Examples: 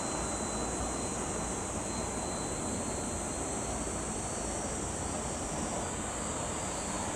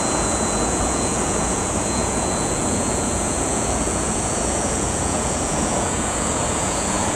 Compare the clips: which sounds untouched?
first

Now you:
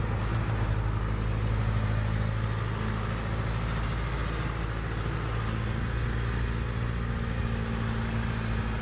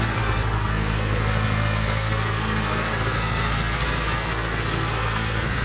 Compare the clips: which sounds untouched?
first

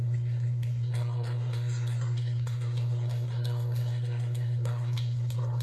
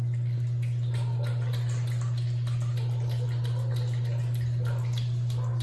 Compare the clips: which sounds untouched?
second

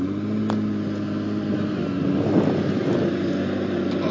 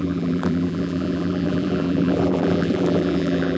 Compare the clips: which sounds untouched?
first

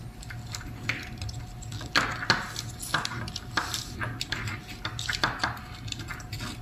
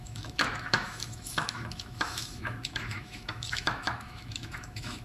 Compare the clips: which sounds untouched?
first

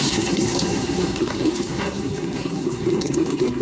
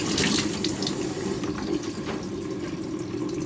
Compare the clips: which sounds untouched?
second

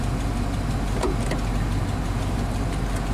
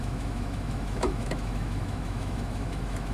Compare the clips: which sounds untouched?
first